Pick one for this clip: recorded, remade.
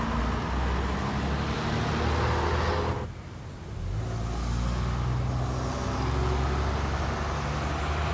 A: recorded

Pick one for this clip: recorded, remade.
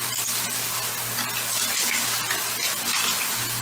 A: recorded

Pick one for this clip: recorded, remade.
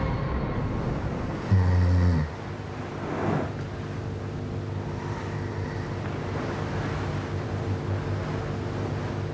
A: recorded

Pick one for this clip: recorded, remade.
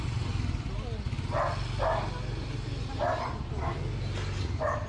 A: recorded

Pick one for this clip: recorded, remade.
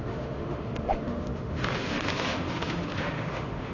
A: remade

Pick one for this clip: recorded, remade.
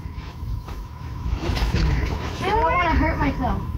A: remade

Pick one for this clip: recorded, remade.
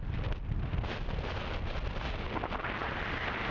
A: recorded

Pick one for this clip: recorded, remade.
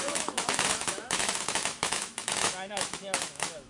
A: remade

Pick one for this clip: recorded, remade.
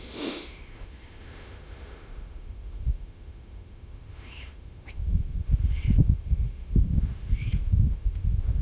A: remade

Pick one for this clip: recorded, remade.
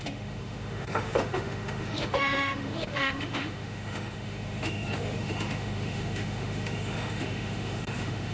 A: remade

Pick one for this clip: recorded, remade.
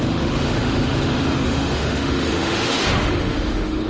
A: remade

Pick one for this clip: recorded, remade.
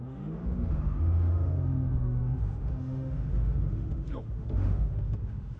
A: remade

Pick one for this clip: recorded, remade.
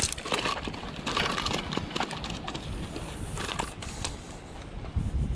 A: recorded